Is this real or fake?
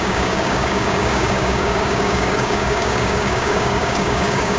fake